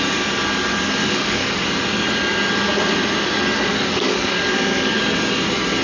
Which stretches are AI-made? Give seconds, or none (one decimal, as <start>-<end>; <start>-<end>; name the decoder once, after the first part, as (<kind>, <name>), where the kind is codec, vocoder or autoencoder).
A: 0.7-1.6 (codec, DAC); 3.7-5.0